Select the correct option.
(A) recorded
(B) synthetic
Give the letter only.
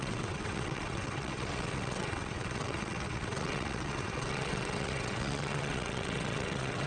B